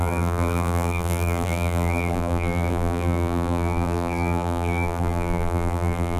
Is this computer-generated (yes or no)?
yes